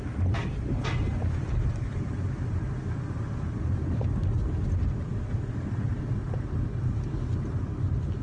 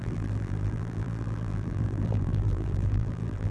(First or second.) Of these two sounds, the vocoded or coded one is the second